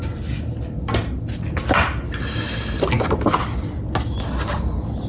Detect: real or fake real